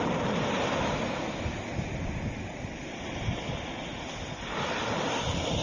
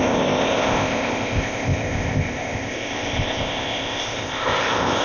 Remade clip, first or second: second